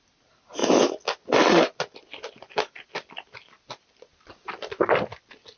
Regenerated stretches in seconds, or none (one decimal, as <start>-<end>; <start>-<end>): none